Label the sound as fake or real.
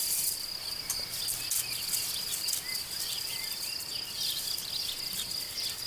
real